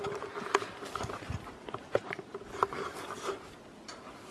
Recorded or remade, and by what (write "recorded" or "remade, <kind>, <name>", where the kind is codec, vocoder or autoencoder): recorded